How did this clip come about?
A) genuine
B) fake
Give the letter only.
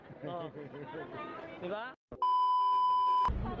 A